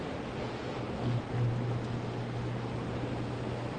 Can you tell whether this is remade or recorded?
recorded